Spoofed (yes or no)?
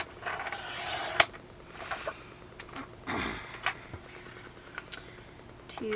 no